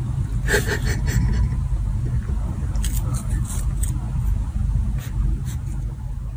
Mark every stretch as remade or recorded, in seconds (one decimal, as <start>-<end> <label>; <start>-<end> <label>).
0.0-6.4 recorded